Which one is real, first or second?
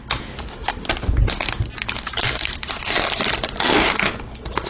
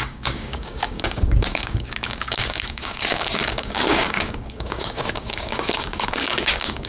first